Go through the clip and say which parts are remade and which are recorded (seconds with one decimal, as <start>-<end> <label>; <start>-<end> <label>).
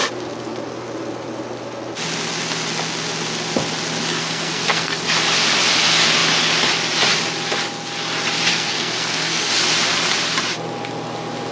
0.0-4.1 recorded; 4.1-5.0 remade; 5.0-8.5 recorded; 8.5-9.5 remade; 9.5-11.5 recorded